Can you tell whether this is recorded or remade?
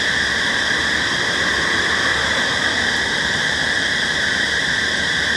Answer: remade